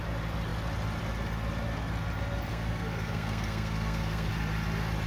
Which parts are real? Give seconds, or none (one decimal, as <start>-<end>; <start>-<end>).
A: 0.0-2.5; 4.3-5.1